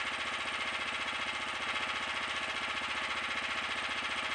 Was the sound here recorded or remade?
recorded